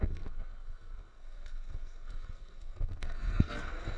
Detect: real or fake fake